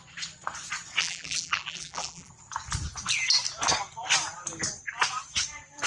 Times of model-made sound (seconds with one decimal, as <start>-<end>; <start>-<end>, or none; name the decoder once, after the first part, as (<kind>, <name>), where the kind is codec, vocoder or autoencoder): 1.0-2.3 (vocoder, BigVGAN v2)